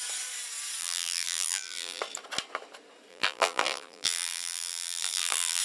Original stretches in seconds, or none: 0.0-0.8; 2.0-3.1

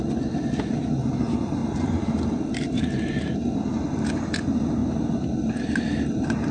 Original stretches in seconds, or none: 0.0-1.6; 3.6-6.5

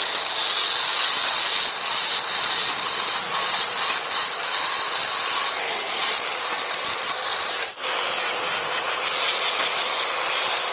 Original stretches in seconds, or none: 0.0-10.7

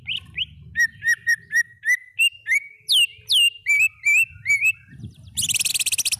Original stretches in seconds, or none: 0.0-6.2

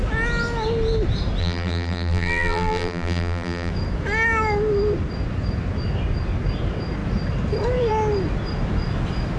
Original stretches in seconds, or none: 0.0-1.4; 3.7-9.4

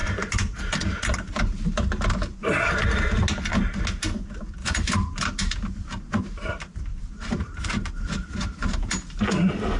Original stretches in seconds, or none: 0.6-4.6; 5.4-6.9; 8.3-9.8

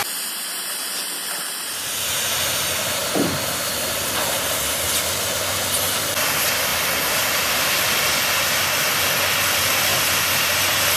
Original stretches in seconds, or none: 0.0-9.9; 10.5-11.0

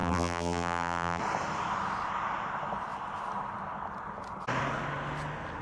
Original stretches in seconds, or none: 1.2-5.6